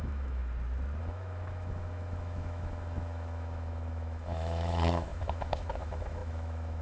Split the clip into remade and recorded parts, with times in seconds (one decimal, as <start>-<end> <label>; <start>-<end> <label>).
0.0-0.4 remade; 0.4-1.0 recorded; 1.0-6.8 remade